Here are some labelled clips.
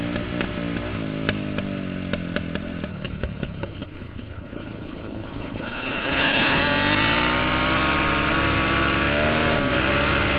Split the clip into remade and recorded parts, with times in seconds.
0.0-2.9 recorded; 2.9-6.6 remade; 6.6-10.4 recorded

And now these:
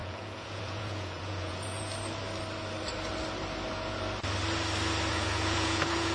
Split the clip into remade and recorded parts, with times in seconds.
0.0-1.9 remade; 1.9-5.1 recorded; 5.1-6.1 remade

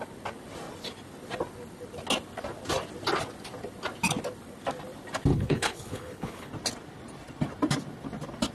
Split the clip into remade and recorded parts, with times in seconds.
0.0-5.3 recorded; 5.3-6.5 remade; 6.5-8.5 recorded

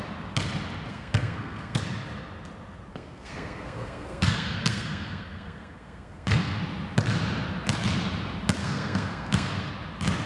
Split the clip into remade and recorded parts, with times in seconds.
0.0-0.9 recorded; 0.9-1.8 remade; 1.8-2.9 recorded; 2.9-6.6 remade; 6.6-8.6 recorded; 8.6-9.7 remade; 9.7-10.3 recorded

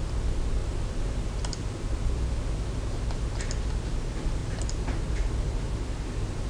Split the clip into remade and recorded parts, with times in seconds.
0.0-0.6 recorded; 0.6-2.1 remade; 2.1-4.4 recorded; 4.4-6.5 remade

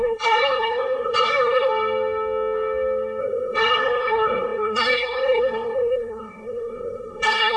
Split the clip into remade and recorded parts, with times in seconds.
0.0-1.7 remade; 1.7-3.2 recorded; 3.2-7.6 remade

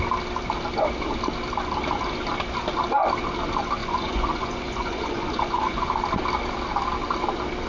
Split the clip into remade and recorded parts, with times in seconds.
0.0-3.8 recorded; 3.8-5.9 remade; 5.9-7.7 recorded

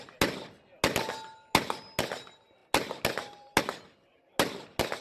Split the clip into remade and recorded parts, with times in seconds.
0.0-5.0 recorded